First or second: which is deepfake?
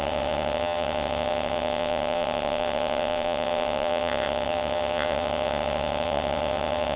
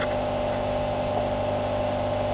first